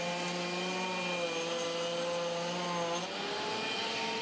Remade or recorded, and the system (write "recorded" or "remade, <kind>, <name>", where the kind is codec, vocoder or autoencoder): recorded